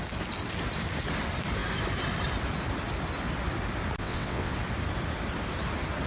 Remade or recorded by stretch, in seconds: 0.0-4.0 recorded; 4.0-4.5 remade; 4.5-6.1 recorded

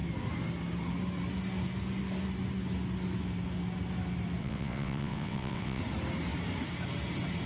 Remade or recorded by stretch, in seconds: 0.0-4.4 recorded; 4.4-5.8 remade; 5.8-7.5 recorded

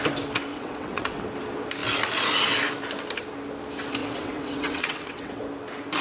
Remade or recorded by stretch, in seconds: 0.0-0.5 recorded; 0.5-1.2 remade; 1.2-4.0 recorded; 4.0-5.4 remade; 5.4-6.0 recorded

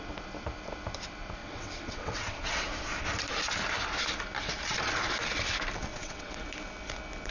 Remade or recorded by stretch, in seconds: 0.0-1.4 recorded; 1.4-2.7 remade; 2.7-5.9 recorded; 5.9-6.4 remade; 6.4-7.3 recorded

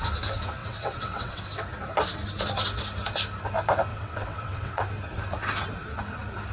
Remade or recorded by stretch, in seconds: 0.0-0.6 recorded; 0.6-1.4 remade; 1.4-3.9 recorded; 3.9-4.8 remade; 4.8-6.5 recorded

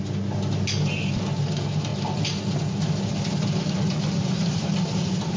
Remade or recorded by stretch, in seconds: 0.0-5.4 recorded

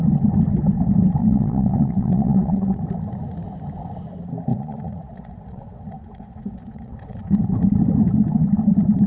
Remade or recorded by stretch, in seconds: 0.0-1.2 recorded; 1.2-2.8 remade; 2.8-4.5 recorded; 4.5-7.4 remade; 7.4-9.1 recorded